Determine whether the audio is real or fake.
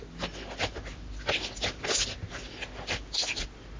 real